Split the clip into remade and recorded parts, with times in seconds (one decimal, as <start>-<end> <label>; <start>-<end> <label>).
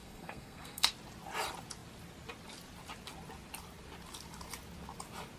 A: 0.0-0.9 remade; 0.9-5.4 recorded